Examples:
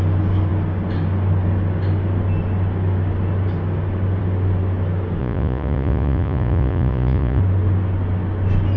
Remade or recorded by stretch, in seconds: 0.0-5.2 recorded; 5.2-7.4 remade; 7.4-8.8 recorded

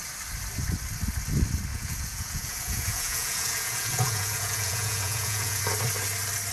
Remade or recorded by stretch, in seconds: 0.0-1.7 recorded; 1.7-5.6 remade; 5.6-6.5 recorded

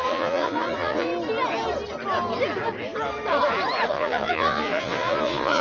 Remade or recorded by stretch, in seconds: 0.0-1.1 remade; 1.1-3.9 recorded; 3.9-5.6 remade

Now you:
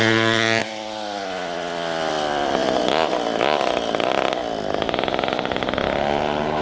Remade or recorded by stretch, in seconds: 0.0-6.6 recorded